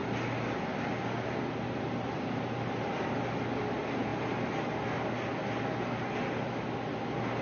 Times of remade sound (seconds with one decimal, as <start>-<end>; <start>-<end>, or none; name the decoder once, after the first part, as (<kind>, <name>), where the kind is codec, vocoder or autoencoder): none